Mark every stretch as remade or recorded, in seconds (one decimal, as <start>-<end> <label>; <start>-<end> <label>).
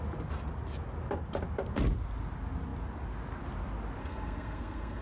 0.0-4.0 recorded; 4.0-5.0 remade